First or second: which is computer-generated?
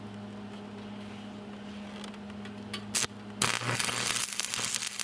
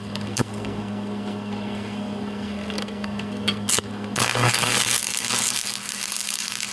second